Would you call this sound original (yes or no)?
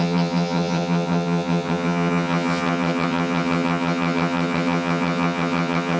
no